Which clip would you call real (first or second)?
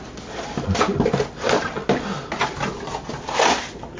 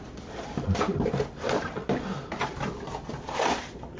first